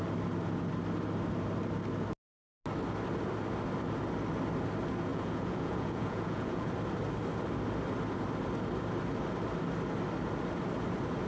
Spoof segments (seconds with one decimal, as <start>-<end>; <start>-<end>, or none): 5.1-6.7

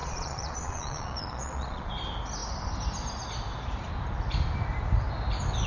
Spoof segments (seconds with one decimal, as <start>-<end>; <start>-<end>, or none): 0.0-1.9

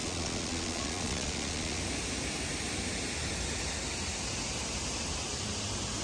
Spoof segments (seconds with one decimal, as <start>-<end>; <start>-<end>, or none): 0.0-1.8

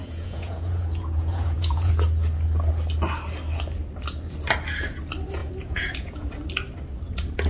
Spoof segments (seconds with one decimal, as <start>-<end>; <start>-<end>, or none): 0.0-1.9; 5.4-6.3